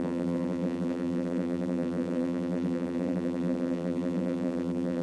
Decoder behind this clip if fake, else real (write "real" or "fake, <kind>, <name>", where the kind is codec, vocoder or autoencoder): fake, vocoder, BigVGAN v2